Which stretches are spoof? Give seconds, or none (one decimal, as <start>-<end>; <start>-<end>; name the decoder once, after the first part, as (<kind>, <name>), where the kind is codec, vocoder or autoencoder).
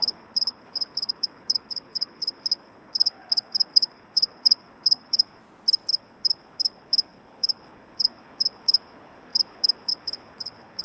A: 0.0-5.4 (codec, HILCodec); 5.9-10.8